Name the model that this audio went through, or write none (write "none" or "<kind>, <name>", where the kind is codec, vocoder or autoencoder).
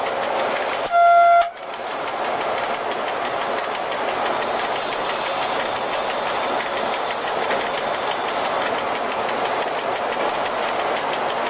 none